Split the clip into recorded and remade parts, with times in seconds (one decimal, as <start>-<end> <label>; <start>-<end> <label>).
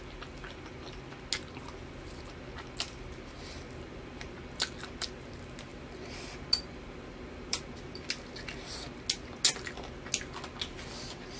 0.0-5.7 recorded; 5.7-7.6 remade; 7.6-11.4 recorded